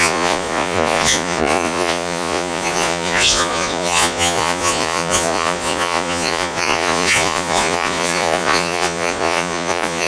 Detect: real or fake fake